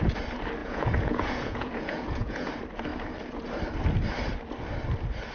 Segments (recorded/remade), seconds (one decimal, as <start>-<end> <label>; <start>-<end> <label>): 0.0-0.6 recorded; 0.6-2.5 remade; 2.5-5.3 recorded